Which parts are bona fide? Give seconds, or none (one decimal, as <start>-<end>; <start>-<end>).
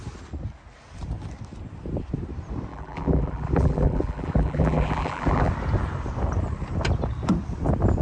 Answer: 0.0-2.7; 5.5-8.0